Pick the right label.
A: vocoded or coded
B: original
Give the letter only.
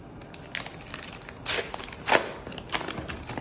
B